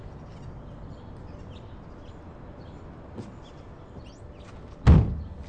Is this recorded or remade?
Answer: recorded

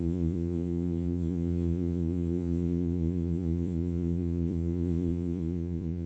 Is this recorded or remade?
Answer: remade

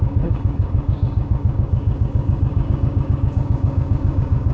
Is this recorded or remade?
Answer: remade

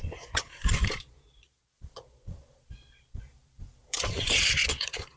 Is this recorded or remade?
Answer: remade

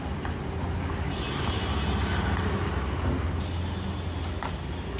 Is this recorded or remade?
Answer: recorded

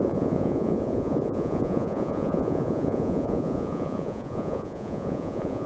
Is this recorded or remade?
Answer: remade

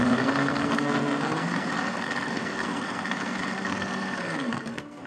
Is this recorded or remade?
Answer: remade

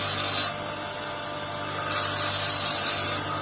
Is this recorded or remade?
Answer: recorded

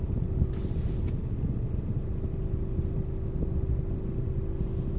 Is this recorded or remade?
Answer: recorded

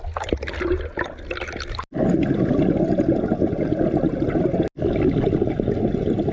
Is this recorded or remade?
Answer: recorded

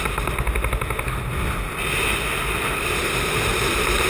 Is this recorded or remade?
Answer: recorded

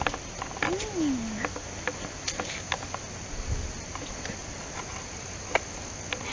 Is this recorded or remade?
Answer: recorded